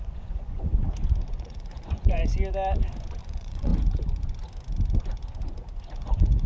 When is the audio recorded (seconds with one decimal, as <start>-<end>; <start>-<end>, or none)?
0.7-1.3; 2.2-3.2; 3.7-5.8